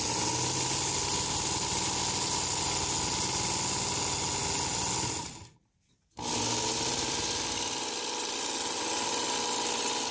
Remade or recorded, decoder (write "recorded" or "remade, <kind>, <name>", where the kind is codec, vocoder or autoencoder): recorded